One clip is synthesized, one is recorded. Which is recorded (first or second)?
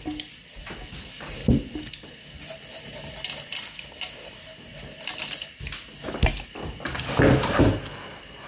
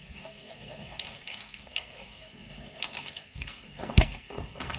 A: first